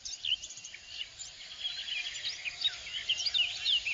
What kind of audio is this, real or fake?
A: real